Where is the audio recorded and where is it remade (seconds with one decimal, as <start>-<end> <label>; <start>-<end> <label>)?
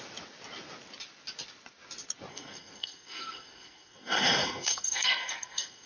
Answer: 0.0-2.3 recorded; 2.3-5.9 remade